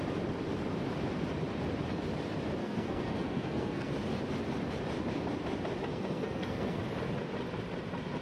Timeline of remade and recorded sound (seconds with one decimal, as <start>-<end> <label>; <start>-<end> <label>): 0.0-2.6 recorded; 2.6-3.9 remade; 3.9-5.9 recorded; 5.9-6.8 remade; 6.8-8.2 recorded